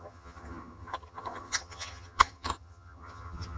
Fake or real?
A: fake